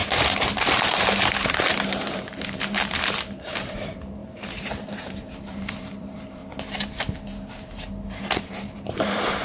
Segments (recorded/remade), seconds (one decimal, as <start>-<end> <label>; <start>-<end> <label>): 0.0-6.4 remade; 6.4-8.5 recorded; 8.5-9.4 remade